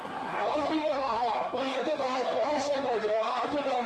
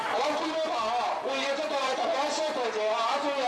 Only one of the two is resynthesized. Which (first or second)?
first